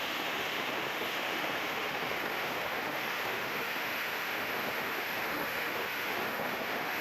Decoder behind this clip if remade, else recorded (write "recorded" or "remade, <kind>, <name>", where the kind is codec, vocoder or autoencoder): remade, autoencoder, DAC-VAE